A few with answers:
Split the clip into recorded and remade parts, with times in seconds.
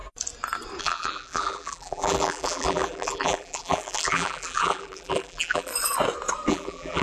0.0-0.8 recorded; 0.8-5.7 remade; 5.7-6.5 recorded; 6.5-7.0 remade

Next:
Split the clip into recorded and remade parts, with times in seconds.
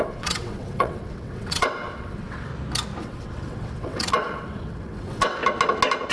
0.0-2.5 remade; 2.5-3.0 recorded; 3.0-5.4 remade; 5.4-6.1 recorded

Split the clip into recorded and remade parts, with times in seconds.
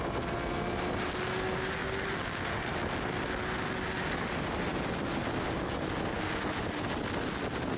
0.0-7.8 recorded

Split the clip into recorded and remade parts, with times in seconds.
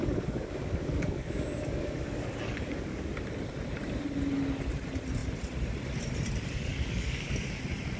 0.0-3.1 remade; 3.1-6.7 recorded; 6.7-7.6 remade; 7.6-8.0 recorded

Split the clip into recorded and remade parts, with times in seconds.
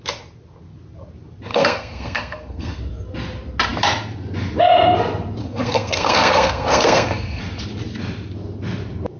0.0-1.5 recorded; 1.5-2.8 remade; 2.8-5.4 recorded; 5.4-7.4 remade; 7.4-9.2 recorded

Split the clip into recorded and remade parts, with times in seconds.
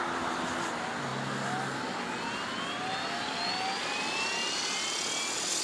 0.0-5.6 recorded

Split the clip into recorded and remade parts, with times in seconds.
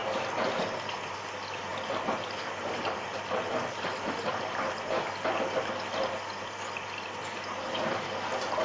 0.0-0.6 remade; 0.6-1.7 recorded; 1.7-4.6 remade; 4.6-8.6 recorded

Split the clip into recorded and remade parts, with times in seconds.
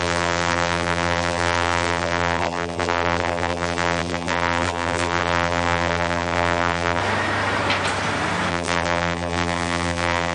0.0-7.0 remade; 7.0-8.5 recorded; 8.5-10.3 remade